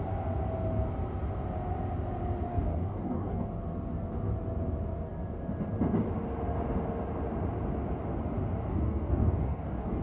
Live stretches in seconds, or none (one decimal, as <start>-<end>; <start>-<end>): 0.0-2.5; 3.5-8.7